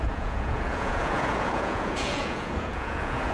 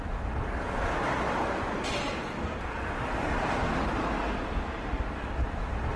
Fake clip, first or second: first